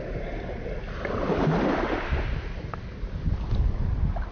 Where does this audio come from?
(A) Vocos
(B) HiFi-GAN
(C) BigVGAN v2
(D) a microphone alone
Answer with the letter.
D